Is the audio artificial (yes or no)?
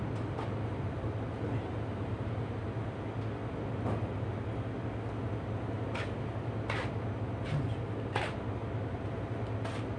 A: no